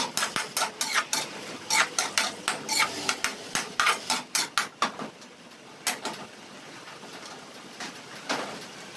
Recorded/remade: recorded